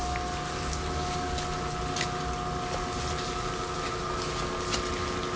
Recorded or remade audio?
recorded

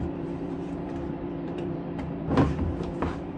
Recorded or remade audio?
remade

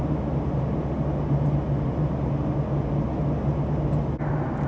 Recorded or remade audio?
recorded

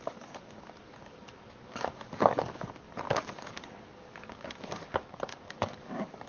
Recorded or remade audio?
remade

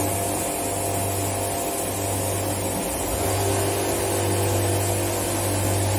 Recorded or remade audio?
recorded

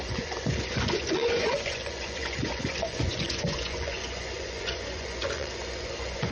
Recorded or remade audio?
remade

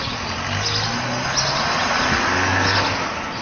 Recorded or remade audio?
recorded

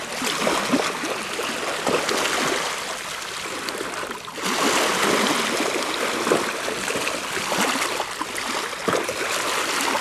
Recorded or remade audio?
recorded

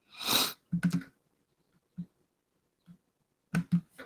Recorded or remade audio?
recorded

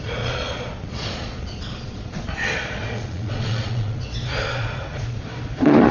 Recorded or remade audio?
remade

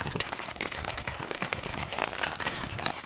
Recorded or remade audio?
remade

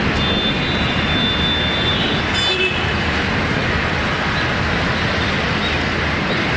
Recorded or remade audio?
recorded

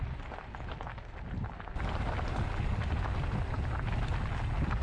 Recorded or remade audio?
recorded